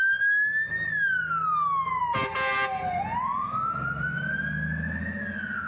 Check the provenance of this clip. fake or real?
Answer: real